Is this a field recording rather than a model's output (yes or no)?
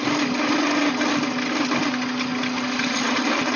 yes